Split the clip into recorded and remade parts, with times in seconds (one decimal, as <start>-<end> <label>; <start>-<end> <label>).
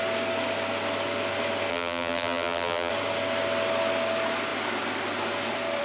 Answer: 0.0-1.7 recorded; 1.7-2.9 remade; 2.9-5.8 recorded